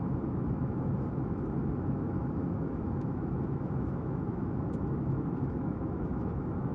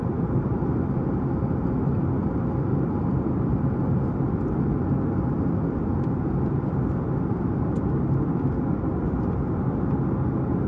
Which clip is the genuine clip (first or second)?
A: second